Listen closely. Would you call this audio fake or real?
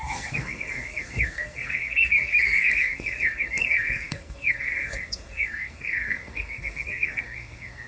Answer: fake